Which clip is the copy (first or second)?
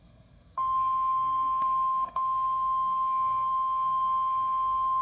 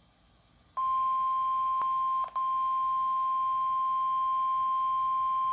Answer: first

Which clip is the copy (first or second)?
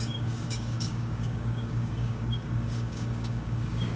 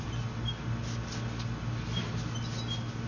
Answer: first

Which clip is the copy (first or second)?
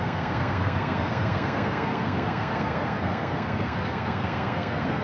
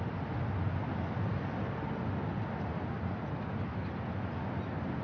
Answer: first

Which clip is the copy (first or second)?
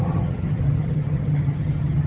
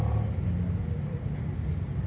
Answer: first